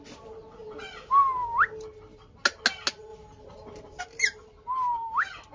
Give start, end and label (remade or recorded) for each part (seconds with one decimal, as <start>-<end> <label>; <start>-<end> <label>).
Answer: 0.0-5.5 recorded